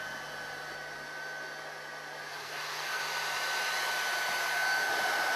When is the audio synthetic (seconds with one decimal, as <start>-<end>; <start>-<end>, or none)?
2.3-3.0